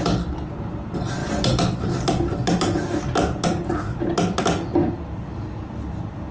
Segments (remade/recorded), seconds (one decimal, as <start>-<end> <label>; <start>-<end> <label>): 0.0-6.3 recorded